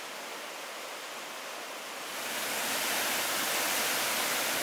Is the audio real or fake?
real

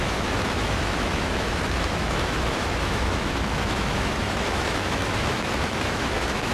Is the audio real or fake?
fake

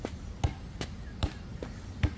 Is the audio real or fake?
real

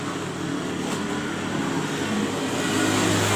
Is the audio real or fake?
real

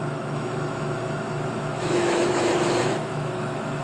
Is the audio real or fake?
fake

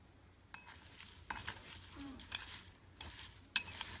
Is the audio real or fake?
real